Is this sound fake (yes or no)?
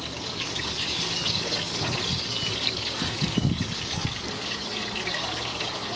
yes